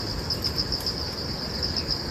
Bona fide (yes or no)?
yes